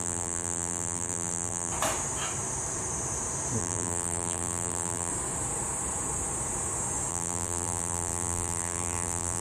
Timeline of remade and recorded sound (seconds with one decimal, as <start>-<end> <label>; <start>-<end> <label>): 0.0-1.7 remade; 1.7-3.6 recorded; 3.6-5.1 remade; 5.1-7.1 recorded; 7.1-9.4 remade